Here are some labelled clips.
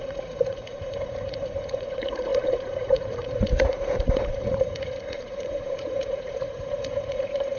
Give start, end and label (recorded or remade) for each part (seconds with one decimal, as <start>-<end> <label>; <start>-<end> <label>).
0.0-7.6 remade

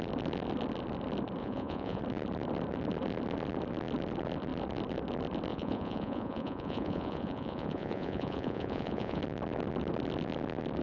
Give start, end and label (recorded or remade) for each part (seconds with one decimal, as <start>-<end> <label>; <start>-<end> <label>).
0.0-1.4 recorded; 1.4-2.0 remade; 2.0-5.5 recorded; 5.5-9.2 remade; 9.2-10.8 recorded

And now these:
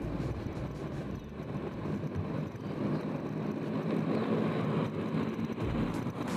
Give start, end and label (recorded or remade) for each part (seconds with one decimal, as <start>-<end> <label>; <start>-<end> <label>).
0.0-1.0 recorded; 1.0-2.6 remade; 2.6-6.4 recorded